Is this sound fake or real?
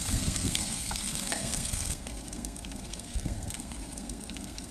fake